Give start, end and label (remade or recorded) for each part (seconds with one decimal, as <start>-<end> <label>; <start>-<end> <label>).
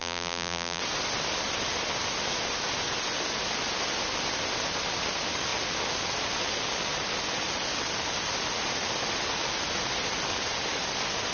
0.0-0.8 remade; 0.8-11.3 recorded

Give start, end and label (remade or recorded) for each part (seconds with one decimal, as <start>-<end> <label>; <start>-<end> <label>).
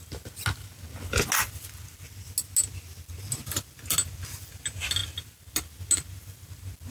0.0-6.9 recorded